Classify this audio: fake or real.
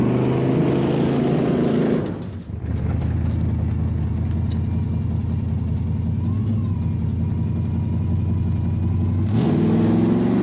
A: real